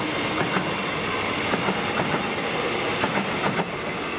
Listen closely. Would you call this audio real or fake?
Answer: real